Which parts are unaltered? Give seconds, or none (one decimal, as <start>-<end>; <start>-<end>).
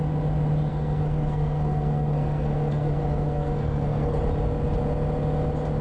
0.0-0.7; 4.2-5.8